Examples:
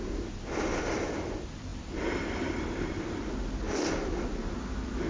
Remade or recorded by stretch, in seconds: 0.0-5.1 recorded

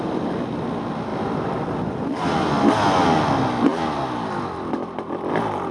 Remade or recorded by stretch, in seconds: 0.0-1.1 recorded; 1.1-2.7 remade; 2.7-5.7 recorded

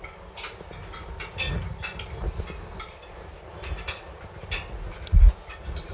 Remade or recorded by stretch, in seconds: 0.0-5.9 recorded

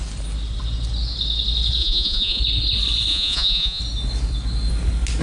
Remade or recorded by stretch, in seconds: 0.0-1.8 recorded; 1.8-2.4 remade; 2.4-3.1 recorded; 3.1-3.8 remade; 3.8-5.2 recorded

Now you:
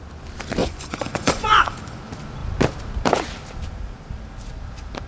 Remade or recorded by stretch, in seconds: 0.0-0.6 recorded; 0.6-2.0 remade; 2.0-5.1 recorded

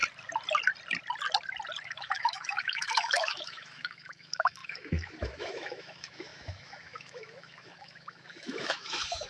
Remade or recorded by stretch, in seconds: 0.0-1.8 recorded; 1.8-9.3 remade